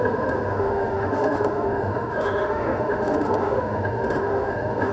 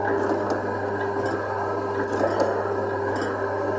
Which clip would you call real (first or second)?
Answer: second